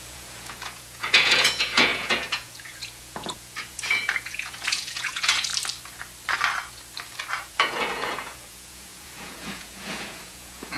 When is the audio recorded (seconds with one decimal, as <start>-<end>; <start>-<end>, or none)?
5.5-7.4